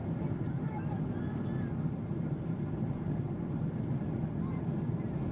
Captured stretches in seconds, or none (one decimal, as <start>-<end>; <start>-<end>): 0.0-5.3